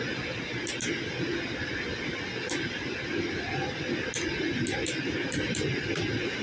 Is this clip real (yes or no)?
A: yes